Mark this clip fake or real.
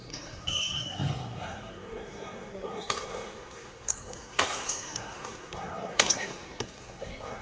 fake